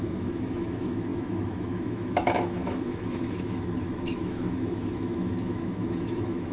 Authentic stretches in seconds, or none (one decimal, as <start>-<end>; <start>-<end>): none